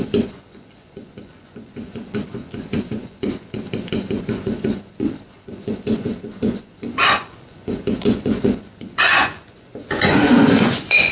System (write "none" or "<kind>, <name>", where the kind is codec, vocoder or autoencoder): vocoder, Vocos